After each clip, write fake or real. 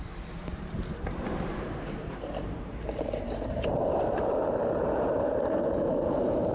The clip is fake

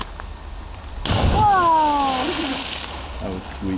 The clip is real